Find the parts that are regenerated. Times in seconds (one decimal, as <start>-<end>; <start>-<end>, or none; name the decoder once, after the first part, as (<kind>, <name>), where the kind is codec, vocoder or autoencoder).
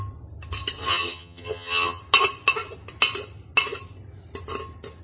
0.9-2.0 (vocoder, HiFi-GAN)